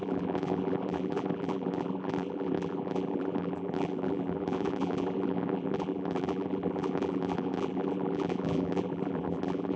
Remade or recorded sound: remade